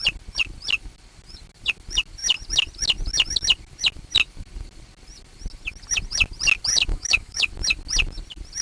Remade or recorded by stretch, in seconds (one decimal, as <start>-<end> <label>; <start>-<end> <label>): 0.0-6.9 recorded; 6.9-7.5 remade; 7.5-8.6 recorded